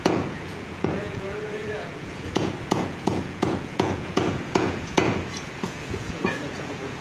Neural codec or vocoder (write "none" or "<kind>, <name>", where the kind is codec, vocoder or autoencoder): vocoder, Vocos